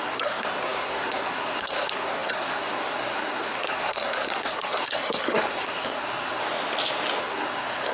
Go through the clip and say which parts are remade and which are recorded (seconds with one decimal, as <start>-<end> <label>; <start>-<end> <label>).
0.0-6.4 remade; 6.4-7.2 recorded; 7.2-7.9 remade